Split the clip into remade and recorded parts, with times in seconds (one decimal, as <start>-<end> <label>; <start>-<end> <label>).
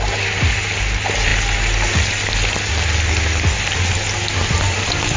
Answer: 0.0-5.2 recorded